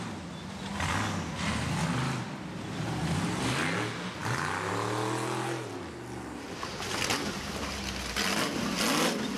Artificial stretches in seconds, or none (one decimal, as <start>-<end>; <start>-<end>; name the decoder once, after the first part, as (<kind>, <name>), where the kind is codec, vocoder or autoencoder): none